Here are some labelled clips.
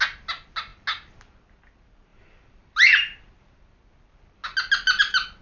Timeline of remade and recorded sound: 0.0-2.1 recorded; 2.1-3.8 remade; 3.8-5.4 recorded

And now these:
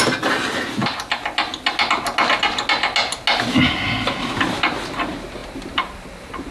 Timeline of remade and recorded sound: 0.0-5.4 recorded; 5.4-6.5 remade

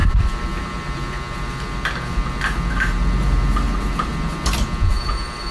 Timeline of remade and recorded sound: 0.0-2.7 recorded; 2.7-4.1 remade; 4.1-4.9 recorded; 4.9-5.5 remade

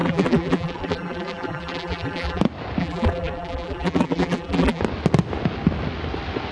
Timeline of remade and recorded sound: 0.0-2.4 remade; 2.4-2.8 recorded; 2.8-4.8 remade; 4.8-6.5 recorded

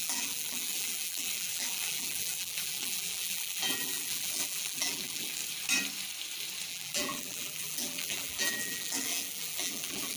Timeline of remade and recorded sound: 0.0-5.4 remade; 5.4-6.7 recorded; 6.7-10.2 remade